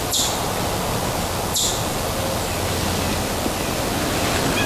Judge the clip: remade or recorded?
recorded